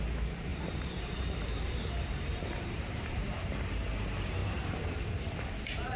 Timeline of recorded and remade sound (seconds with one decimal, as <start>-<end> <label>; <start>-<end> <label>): 0.0-0.5 recorded; 0.5-3.9 remade; 3.9-4.4 recorded; 4.4-5.1 remade; 5.1-6.0 recorded